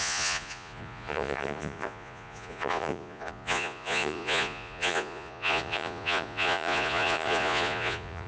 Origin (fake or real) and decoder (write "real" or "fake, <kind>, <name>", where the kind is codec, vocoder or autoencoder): fake, vocoder, Vocos